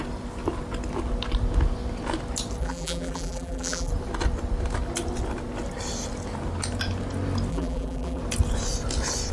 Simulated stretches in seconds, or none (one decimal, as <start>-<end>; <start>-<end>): 2.6-3.9; 7.5-8.2